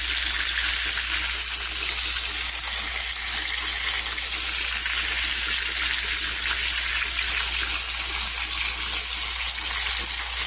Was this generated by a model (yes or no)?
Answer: no